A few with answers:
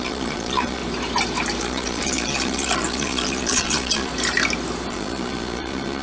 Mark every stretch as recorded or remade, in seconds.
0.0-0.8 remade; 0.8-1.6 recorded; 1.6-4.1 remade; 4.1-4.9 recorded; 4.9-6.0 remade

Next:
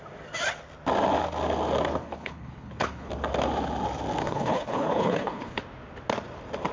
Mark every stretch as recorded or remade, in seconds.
0.0-2.0 recorded; 2.0-3.1 remade; 3.1-4.2 recorded; 4.2-5.6 remade; 5.6-6.7 recorded